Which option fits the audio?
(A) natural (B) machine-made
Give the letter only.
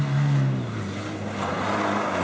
A